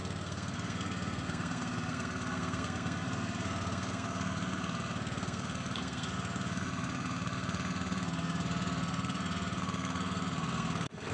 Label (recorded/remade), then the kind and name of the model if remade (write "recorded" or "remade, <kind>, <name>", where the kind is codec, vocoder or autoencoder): remade, codec, SNAC